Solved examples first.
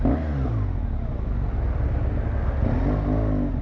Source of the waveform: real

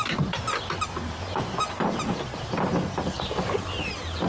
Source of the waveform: real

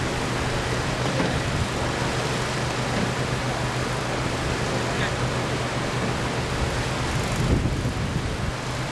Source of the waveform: real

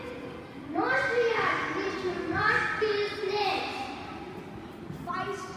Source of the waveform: real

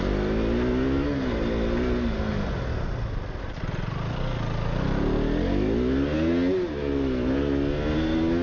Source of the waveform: real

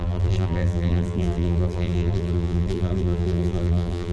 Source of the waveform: fake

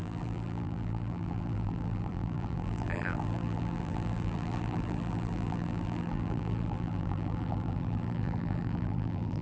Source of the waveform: fake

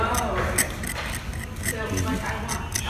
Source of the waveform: real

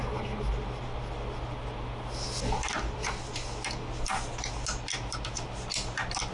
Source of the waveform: real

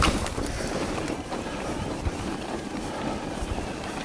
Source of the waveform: fake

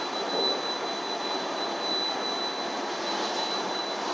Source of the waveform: fake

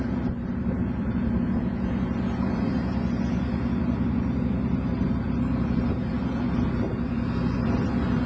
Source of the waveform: fake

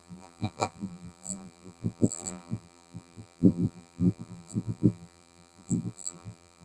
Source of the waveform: fake